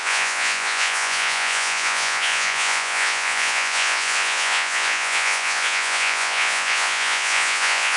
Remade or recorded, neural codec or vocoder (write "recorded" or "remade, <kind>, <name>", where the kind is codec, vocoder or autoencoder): remade, vocoder, Vocos